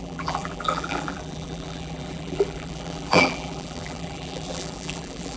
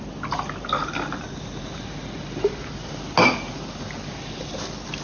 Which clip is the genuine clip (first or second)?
second